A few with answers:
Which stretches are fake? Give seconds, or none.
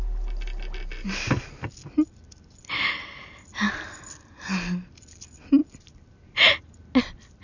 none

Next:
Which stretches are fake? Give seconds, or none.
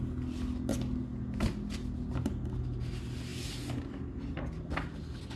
none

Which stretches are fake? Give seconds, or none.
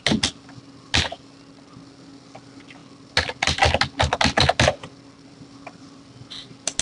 none